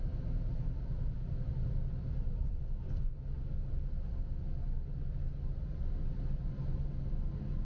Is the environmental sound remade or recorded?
recorded